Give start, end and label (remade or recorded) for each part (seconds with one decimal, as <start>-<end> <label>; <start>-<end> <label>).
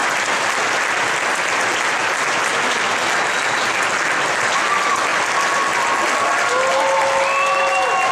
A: 0.0-8.1 recorded